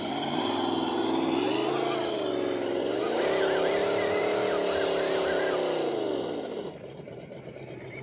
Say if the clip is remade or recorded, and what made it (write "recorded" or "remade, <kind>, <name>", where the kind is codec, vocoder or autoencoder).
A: recorded